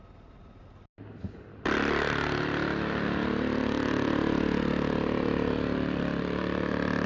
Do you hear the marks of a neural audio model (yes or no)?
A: no